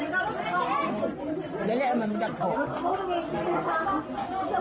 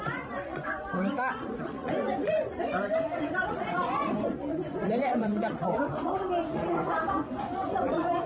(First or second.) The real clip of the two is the first